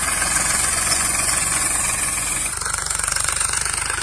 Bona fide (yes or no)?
no